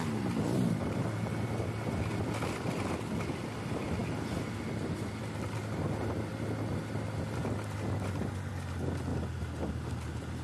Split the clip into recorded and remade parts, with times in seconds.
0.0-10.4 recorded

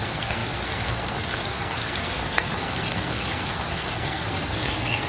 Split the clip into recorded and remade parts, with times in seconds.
0.0-5.1 remade

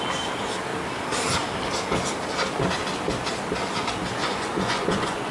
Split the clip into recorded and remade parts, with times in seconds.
0.0-4.2 recorded; 4.2-5.3 remade

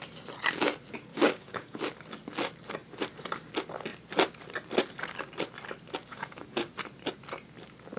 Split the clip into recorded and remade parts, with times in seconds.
0.0-1.1 recorded; 1.1-1.8 remade; 1.8-6.1 recorded; 6.1-6.7 remade; 6.7-8.0 recorded

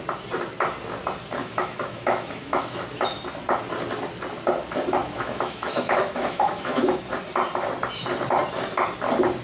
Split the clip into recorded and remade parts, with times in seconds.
0.0-1.4 recorded; 1.4-2.8 remade; 2.8-5.0 recorded; 5.0-7.0 remade; 7.0-9.4 recorded

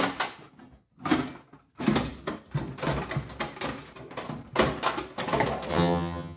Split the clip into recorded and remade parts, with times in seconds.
0.0-5.7 recorded; 5.7-6.4 remade